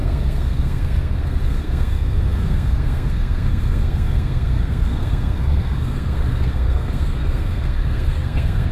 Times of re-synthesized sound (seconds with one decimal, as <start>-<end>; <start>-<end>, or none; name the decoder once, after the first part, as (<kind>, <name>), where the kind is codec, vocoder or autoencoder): 0.0-8.7 (codec, SNAC)